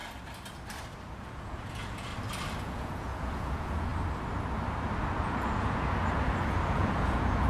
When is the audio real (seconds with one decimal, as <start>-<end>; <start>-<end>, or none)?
0.0-1.2; 2.1-2.6; 3.9-5.0